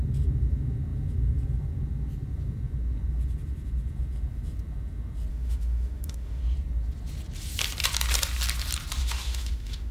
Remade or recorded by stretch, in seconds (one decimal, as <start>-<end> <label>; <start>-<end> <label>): 0.0-5.3 recorded; 5.3-6.4 remade; 6.4-9.0 recorded; 9.0-9.9 remade